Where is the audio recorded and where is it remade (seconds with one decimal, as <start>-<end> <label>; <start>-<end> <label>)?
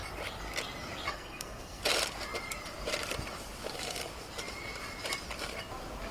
0.0-1.1 recorded; 1.1-1.8 remade; 1.8-6.1 recorded